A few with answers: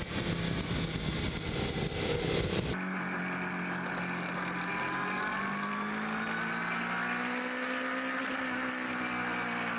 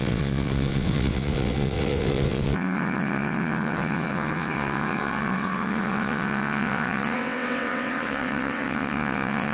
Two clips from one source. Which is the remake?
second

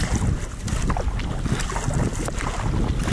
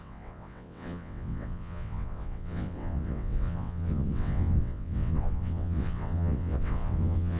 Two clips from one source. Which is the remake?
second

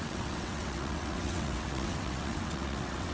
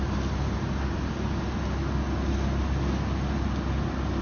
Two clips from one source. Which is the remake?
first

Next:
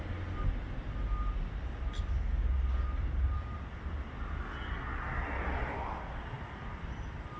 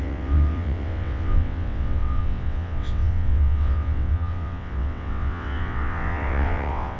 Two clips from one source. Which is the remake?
second